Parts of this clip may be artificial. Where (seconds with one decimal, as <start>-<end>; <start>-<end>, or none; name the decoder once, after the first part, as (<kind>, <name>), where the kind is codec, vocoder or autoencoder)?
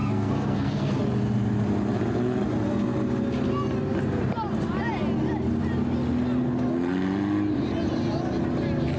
0.0-1.0 (codec, SNAC)